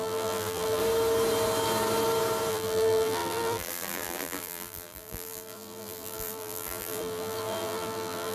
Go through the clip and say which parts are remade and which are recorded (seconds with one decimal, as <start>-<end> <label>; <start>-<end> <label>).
0.0-0.8 remade; 0.8-2.5 recorded; 2.5-8.3 remade